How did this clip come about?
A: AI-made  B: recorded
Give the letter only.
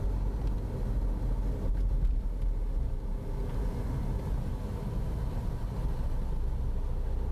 B